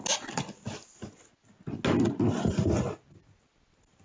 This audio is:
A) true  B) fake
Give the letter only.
A